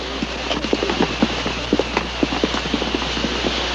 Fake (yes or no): no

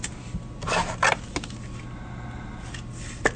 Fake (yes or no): no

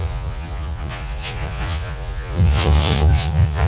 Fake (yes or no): yes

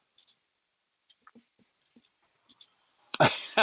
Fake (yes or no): yes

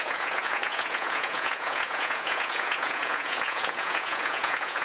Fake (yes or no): yes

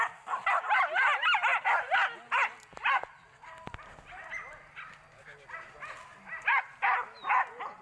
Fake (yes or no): no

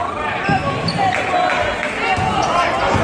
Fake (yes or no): no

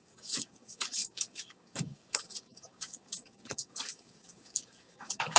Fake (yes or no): yes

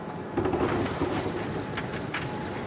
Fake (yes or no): no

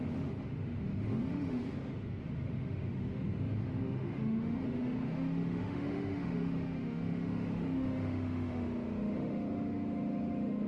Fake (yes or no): yes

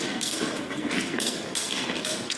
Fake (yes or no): yes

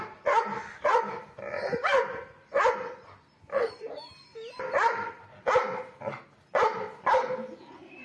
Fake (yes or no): no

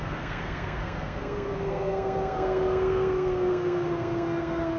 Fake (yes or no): yes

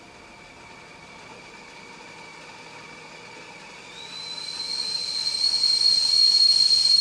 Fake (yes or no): no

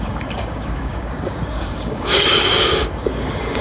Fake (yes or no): yes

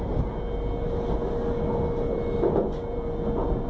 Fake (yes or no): no